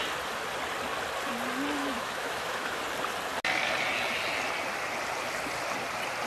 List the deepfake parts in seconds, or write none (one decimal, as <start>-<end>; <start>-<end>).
1.8-2.8